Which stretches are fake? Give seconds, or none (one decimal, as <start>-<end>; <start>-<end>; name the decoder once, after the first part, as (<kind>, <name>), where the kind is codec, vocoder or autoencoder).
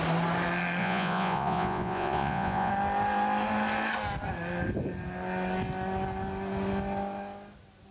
0.8-2.7 (vocoder, Vocos)